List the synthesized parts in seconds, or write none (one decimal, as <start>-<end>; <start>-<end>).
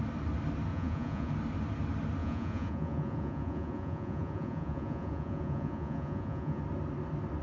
0.7-1.3; 2.2-6.6